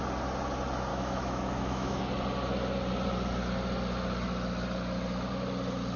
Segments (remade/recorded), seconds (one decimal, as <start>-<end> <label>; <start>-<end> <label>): 0.0-0.9 recorded; 0.9-2.0 remade; 2.0-6.0 recorded